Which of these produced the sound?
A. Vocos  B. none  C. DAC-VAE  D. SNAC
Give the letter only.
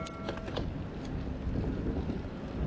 B